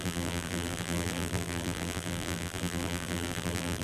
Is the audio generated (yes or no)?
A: yes